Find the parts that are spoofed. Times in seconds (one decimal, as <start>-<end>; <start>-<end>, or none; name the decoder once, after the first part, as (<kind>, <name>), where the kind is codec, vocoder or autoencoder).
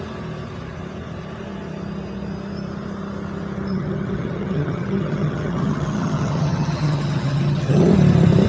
3.7-7.9 (vocoder, HiFi-GAN)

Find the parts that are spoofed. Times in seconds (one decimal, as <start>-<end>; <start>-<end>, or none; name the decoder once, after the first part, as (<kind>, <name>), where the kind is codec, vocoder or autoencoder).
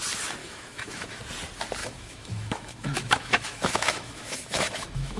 0.4-1.2 (autoencoder, DAC-VAE); 1.8-5.2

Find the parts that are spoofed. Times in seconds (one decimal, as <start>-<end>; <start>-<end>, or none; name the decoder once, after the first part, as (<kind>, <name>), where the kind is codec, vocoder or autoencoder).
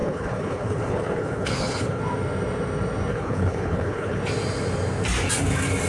0.0-2.0 (codec, HILCodec); 3.1-4.2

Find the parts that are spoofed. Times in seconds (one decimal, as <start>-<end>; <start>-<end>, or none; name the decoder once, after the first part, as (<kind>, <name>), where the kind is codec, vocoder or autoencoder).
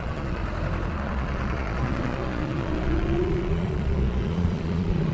0.0-0.4 (vocoder, Vocos); 0.9-5.1